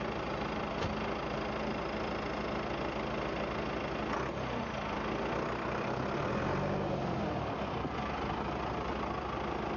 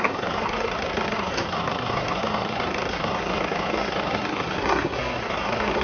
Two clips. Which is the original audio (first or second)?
first